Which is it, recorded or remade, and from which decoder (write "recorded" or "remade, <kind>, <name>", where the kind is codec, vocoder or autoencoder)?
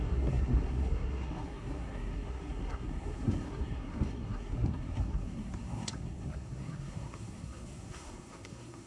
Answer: remade, codec, SNAC